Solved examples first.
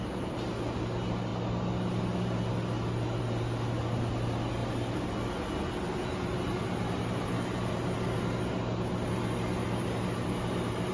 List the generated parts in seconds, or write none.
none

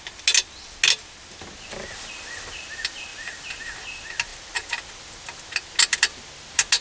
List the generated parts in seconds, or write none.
none

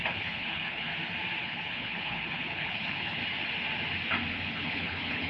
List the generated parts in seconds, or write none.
0.0-0.9 (codec, HILCodec); 1.4-3.2; 4.3-5.3

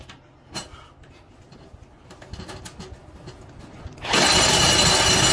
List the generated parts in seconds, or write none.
none

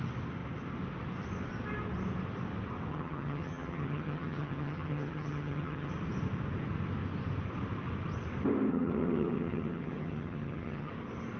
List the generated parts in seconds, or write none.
2.9-5.9 (vocoder, HiFi-GAN); 8.7-10.9

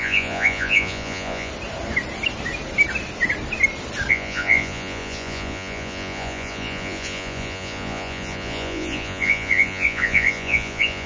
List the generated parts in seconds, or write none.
0.0-1.5 (vocoder, Vocos); 4.1-11.1